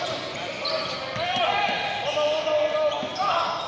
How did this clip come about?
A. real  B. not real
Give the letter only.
A